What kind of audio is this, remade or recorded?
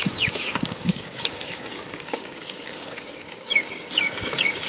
remade